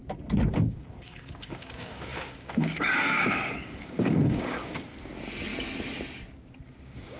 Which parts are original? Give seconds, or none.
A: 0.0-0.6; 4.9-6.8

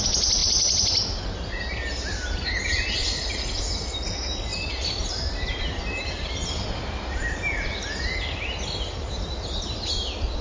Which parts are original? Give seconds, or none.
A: 0.0-10.4

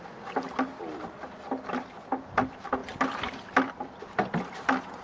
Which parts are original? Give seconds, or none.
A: 0.0-5.0

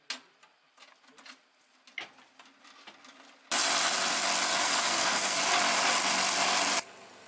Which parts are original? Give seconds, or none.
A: 0.0-4.6; 5.4-7.3

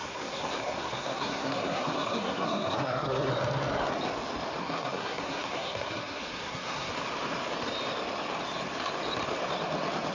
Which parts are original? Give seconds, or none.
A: 3.3-4.6; 6.9-10.1

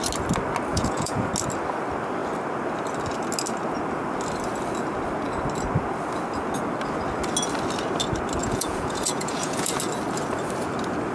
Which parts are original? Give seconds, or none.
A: 0.0-0.7; 1.3-8.4; 9.7-11.1

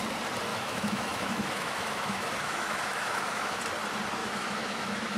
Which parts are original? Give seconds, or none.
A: 0.0-0.5; 3.6-4.2